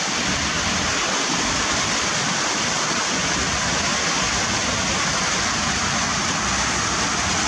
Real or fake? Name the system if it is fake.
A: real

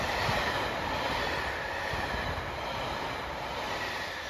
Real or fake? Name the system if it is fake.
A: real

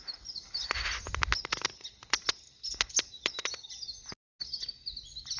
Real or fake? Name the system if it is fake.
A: real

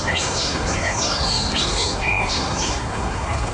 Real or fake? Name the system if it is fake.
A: fake, codec, SNAC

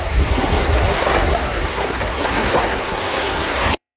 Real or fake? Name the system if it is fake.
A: fake, codec, SNAC